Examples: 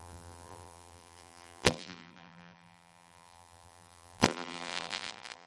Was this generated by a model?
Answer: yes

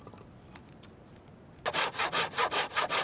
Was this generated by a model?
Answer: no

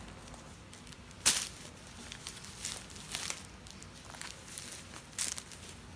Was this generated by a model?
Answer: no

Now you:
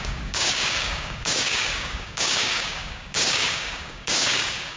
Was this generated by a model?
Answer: yes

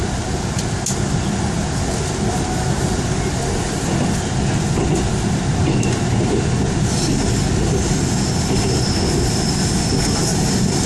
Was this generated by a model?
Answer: no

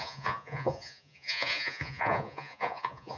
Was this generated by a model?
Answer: yes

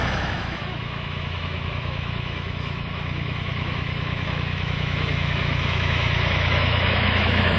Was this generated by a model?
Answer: yes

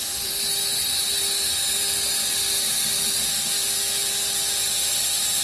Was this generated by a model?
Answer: no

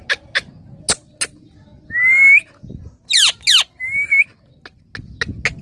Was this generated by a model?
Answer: no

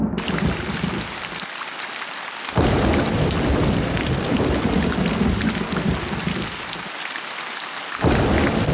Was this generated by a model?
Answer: no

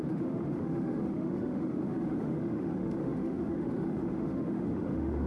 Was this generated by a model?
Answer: yes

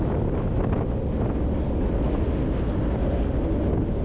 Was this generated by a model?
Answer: no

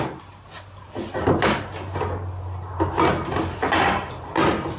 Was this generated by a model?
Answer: no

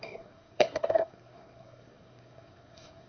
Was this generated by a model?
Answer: yes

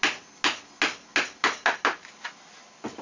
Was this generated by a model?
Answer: no